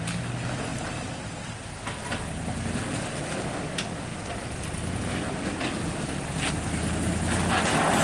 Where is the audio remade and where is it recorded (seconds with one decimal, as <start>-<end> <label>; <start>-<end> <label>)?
0.0-8.0 recorded